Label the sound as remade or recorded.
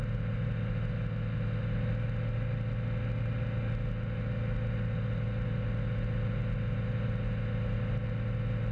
recorded